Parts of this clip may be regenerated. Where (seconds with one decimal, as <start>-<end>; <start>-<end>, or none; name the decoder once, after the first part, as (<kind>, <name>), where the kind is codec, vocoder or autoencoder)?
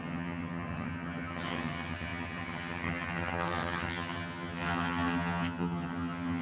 0.0-6.4 (vocoder, HiFi-GAN)